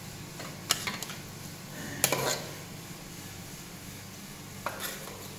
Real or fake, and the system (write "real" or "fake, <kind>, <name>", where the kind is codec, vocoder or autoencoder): real